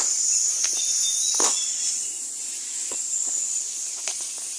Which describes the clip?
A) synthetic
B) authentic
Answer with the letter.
B